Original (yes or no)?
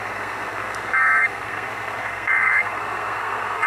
no